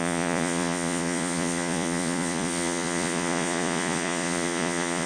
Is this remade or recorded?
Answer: remade